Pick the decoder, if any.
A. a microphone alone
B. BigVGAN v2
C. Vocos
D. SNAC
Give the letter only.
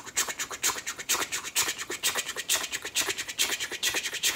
B